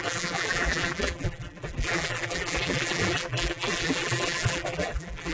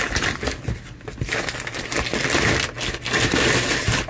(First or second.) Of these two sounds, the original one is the second